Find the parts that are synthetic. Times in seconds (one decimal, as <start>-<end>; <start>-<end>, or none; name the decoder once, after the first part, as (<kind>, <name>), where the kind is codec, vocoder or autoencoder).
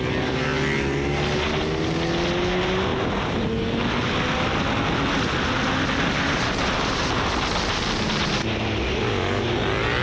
none